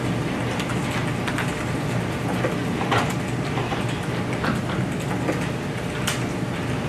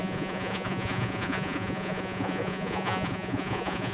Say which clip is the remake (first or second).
second